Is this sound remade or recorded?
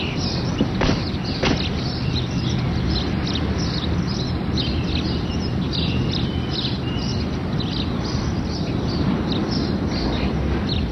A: recorded